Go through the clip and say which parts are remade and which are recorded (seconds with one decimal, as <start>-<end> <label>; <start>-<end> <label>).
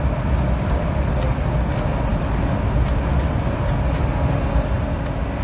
0.0-5.4 recorded